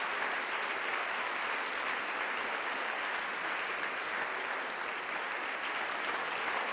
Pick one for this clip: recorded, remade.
recorded